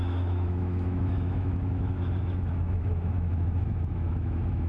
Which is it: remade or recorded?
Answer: remade